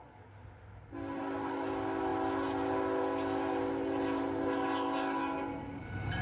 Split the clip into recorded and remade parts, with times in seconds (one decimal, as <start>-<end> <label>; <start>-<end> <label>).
0.0-6.2 recorded